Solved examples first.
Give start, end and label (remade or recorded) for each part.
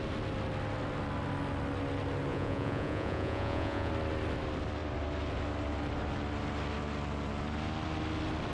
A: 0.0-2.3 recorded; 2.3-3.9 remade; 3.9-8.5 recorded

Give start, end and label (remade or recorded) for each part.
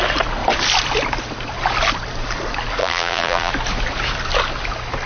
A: 0.0-2.8 recorded; 2.8-3.5 remade; 3.5-5.1 recorded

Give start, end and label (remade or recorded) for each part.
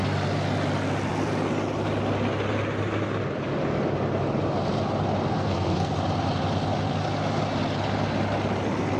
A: 0.0-5.3 recorded; 5.3-5.9 remade; 5.9-9.0 recorded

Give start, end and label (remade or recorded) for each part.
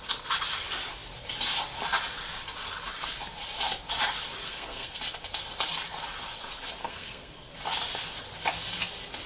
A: 0.0-4.4 recorded; 4.4-5.0 remade; 5.0-6.8 recorded; 6.8-7.5 remade; 7.5-9.3 recorded